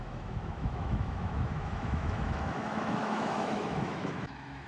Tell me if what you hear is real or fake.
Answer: fake